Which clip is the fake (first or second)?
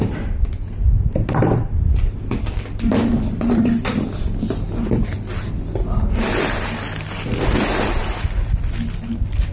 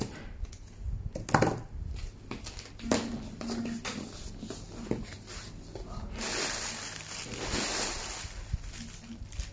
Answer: first